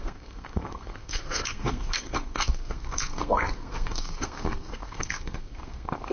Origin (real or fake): fake